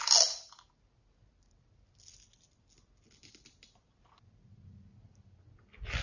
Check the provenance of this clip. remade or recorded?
recorded